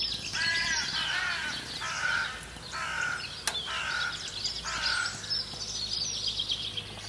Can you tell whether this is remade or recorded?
recorded